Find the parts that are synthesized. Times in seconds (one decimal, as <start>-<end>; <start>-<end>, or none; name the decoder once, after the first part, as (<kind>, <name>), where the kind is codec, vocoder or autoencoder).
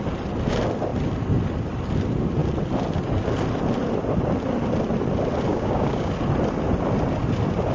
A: 5.5-6.1 (codec, DAC)